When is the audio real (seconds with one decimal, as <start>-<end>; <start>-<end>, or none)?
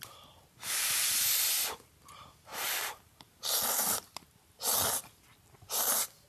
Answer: 0.0-2.5; 3.5-6.3